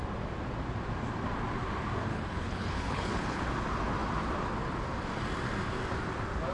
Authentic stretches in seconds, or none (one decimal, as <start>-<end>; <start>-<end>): 0.0-2.1; 3.4-6.5